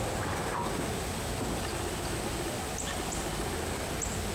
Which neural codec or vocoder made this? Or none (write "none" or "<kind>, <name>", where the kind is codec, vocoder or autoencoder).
none